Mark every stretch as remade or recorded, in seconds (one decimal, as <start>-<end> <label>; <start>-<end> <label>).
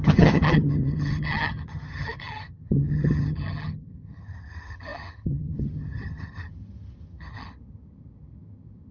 0.0-8.9 remade